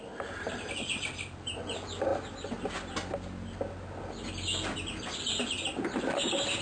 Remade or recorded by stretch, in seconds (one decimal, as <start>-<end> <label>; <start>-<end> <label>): 0.0-6.6 recorded